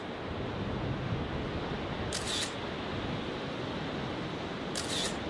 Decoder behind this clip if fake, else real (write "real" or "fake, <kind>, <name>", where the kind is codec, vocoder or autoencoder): real